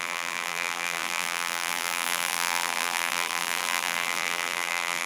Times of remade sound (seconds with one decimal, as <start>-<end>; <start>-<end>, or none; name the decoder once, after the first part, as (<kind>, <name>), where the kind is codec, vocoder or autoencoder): 0.0-5.1 (vocoder, BigVGAN v2)